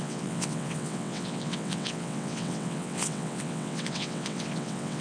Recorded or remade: remade